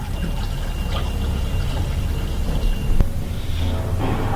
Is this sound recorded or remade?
recorded